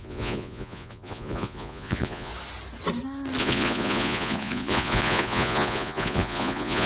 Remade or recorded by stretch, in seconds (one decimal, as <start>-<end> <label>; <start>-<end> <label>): 0.0-2.3 remade; 2.3-3.4 recorded; 3.4-6.9 remade